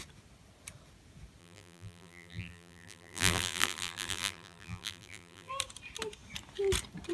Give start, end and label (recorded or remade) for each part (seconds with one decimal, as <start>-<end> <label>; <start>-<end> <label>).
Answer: 0.0-1.4 recorded; 1.4-5.5 remade; 5.5-7.1 recorded